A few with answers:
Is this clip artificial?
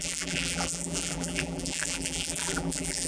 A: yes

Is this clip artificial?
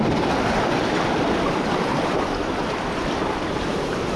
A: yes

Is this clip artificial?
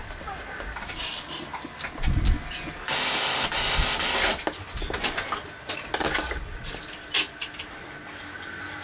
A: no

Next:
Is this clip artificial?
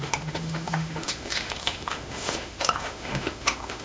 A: yes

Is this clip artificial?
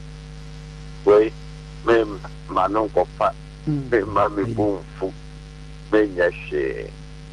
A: yes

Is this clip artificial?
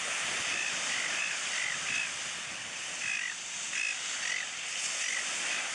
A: no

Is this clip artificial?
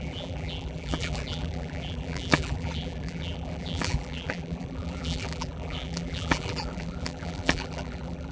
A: yes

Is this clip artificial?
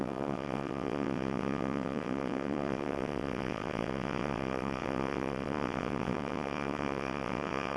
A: yes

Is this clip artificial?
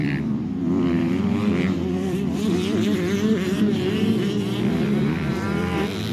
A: yes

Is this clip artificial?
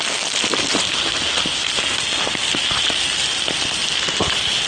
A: no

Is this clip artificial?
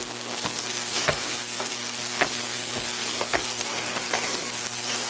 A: yes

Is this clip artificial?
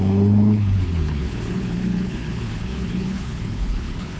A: yes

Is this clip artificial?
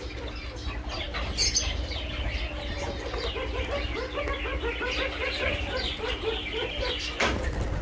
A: no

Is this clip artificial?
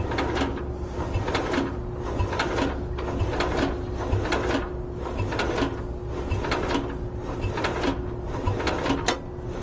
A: no